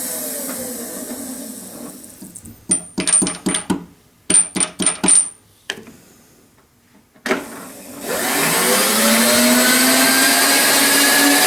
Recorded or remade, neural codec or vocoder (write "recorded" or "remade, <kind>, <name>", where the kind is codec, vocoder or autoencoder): recorded